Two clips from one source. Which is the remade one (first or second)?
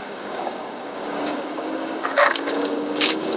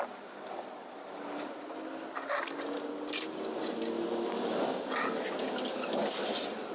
first